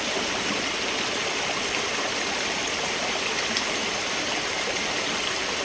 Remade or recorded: recorded